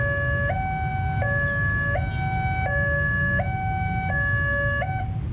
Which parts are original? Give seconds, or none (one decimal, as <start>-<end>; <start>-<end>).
0.0-5.3